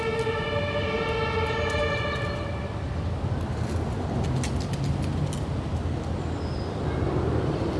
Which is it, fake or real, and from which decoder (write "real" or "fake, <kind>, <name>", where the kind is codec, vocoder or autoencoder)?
real